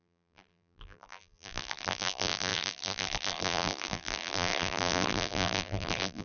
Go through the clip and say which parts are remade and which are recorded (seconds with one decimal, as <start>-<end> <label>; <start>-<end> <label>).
0.0-6.2 remade